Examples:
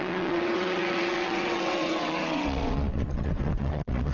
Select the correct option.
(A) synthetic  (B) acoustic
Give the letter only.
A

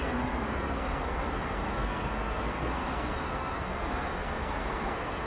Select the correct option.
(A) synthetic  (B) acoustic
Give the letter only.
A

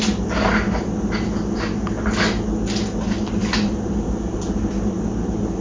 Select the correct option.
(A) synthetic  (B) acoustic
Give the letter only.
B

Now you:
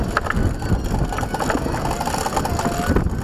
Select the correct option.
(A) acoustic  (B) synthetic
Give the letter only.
A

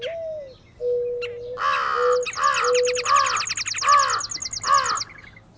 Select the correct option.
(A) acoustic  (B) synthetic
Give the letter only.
A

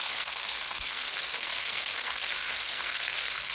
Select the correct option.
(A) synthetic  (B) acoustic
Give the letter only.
A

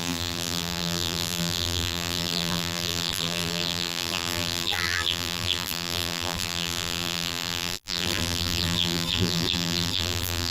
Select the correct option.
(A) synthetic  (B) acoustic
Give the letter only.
A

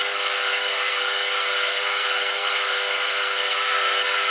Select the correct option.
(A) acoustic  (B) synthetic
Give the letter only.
B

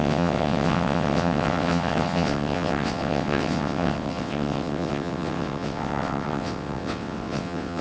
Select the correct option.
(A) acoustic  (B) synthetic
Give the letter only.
B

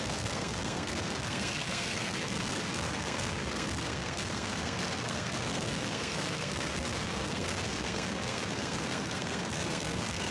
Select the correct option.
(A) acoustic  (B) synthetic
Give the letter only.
B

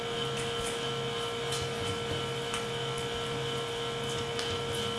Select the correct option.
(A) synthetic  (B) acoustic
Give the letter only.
B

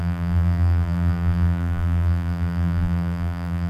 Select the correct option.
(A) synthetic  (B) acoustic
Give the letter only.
A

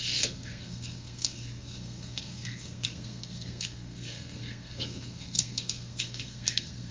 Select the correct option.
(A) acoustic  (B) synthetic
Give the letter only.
B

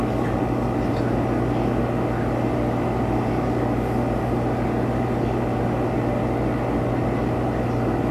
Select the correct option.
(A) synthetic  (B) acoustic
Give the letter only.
B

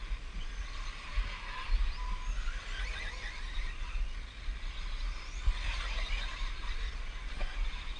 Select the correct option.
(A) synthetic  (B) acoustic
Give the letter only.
B